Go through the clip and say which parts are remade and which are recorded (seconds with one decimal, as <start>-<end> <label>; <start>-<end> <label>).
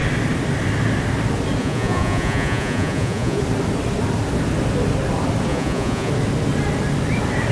0.0-1.6 recorded; 1.6-3.4 remade; 3.4-5.5 recorded; 5.5-6.1 remade; 6.1-7.5 recorded